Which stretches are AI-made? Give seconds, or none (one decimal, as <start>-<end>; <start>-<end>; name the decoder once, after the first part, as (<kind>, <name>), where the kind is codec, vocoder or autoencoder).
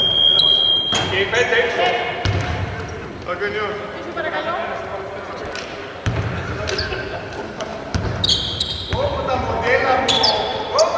none